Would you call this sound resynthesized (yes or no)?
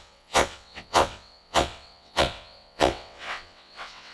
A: yes